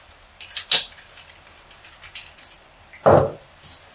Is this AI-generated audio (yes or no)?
no